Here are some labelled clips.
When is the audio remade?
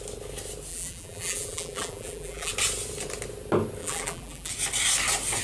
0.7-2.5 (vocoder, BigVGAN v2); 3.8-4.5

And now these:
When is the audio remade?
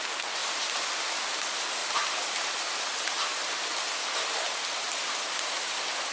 1.8-4.7 (vocoder, BigVGAN v2)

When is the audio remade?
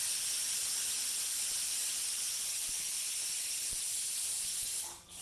none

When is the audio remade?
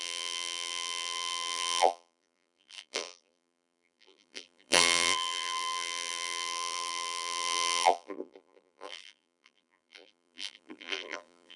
0.0-11.6 (vocoder, BigVGAN v2)